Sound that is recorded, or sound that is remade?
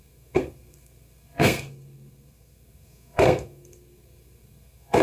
remade